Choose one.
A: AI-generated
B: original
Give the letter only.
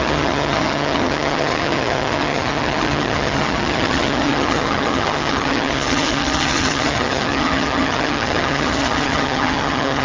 A